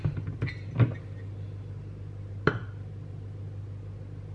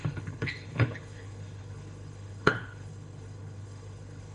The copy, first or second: second